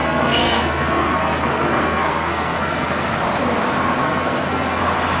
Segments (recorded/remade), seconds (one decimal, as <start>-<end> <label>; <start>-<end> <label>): 0.0-3.1 remade; 3.1-4.0 recorded; 4.0-4.8 remade; 4.8-5.2 recorded